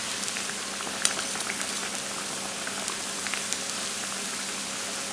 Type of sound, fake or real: real